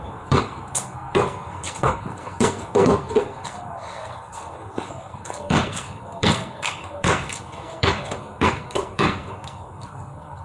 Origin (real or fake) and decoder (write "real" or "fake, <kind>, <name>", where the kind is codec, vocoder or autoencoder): fake, codec, SNAC